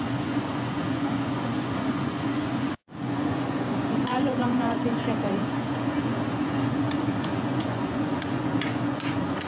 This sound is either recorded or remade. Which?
remade